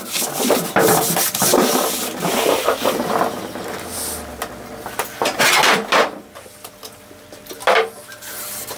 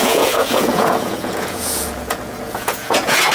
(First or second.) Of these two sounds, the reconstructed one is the second